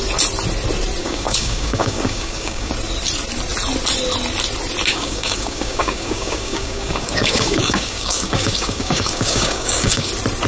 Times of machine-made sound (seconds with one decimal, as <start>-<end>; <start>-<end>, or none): 1.0-2.7; 4.9-10.1